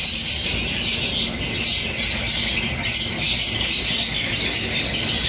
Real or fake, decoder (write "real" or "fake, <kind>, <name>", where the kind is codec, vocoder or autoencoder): real